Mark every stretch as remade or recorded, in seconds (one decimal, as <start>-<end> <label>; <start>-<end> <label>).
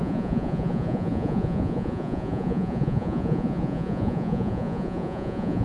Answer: 0.0-5.6 remade